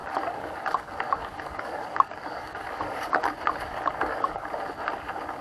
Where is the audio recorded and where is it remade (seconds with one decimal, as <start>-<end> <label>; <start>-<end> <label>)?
0.0-3.2 remade; 3.2-3.7 recorded; 3.7-4.5 remade; 4.5-5.4 recorded